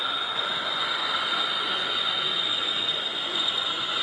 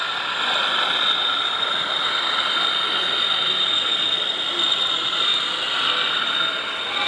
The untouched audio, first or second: second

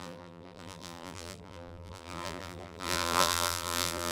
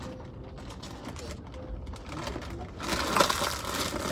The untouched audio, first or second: second